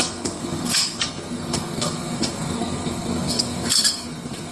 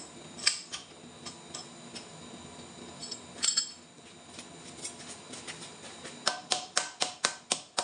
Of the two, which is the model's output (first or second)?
first